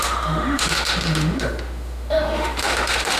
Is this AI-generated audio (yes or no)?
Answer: yes